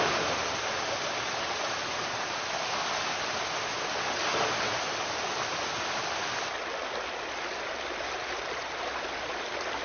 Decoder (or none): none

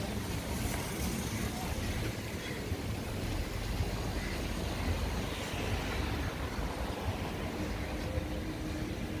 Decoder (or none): none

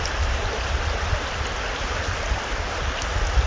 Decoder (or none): none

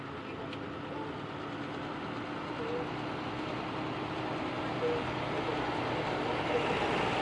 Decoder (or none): none